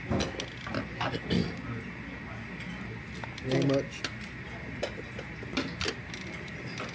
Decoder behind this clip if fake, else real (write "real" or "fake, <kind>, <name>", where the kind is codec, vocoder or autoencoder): real